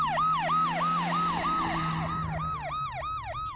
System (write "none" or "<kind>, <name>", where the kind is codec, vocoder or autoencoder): none